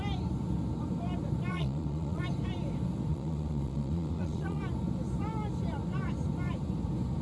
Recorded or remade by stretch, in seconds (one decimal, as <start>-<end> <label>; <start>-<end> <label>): 0.0-1.5 recorded; 1.5-2.2 remade; 2.2-3.1 recorded; 3.1-4.6 remade; 4.6-7.2 recorded